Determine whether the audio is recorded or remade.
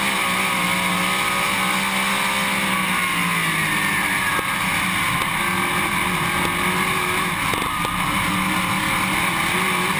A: recorded